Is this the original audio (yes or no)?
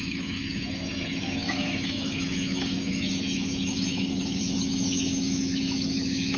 no